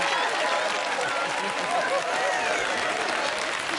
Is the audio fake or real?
real